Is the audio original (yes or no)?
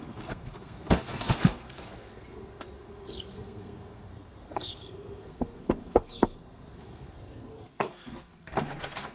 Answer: no